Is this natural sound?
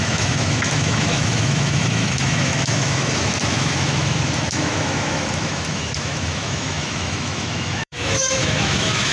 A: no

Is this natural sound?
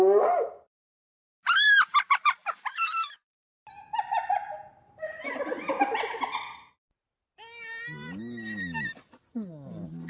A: yes